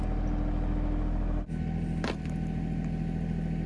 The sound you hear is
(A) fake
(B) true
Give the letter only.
B